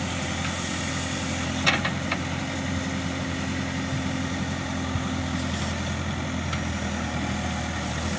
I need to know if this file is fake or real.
real